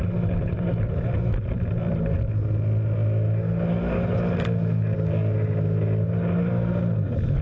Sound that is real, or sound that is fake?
real